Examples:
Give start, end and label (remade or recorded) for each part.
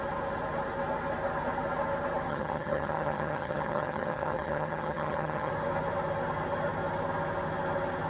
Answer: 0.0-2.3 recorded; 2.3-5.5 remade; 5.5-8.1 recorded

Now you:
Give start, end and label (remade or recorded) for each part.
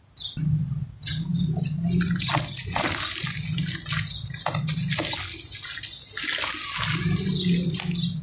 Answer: 0.0-8.2 recorded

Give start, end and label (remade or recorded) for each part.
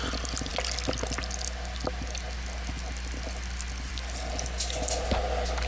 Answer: 0.0-5.7 recorded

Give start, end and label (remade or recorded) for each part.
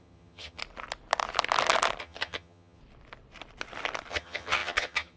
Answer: 0.0-0.6 remade; 0.6-2.0 recorded; 2.0-2.8 remade; 2.8-4.1 recorded; 4.1-5.2 remade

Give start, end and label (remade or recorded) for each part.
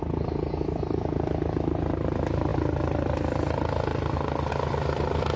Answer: 0.0-5.4 recorded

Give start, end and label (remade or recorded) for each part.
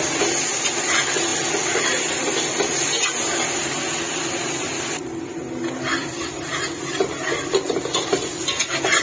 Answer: 0.0-9.0 recorded